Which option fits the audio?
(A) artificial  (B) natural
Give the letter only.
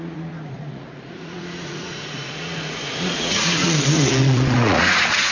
A